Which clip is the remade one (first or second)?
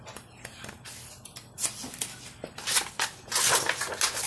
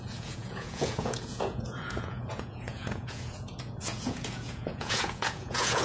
second